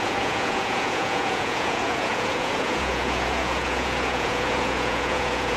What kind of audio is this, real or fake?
fake